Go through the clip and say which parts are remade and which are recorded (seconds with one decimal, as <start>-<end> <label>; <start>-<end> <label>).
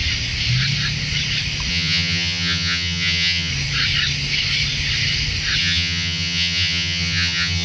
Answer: 0.0-1.7 recorded; 1.7-3.5 remade; 3.5-5.6 recorded; 5.6-7.6 remade